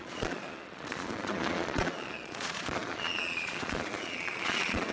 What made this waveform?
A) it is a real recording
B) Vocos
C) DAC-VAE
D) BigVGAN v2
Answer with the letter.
B